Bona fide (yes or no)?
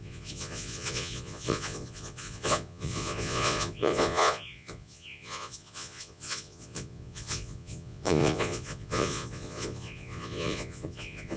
no